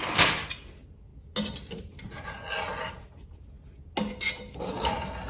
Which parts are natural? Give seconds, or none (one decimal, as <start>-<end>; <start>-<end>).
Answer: 0.0-5.3